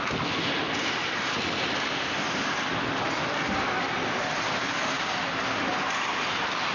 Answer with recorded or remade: recorded